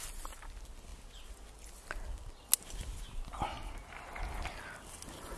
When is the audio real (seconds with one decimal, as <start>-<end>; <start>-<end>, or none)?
0.0-5.4